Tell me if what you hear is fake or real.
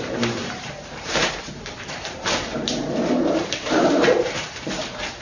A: fake